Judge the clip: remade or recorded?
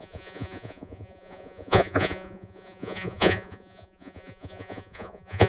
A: remade